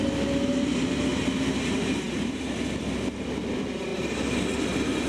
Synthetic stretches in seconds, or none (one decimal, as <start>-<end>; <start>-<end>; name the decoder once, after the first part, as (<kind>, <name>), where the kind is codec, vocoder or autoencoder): none